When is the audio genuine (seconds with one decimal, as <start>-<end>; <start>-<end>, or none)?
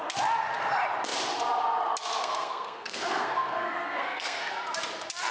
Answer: 0.0-2.2; 4.5-5.3